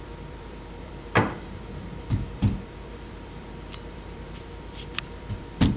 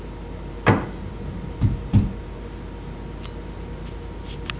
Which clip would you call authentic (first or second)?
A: second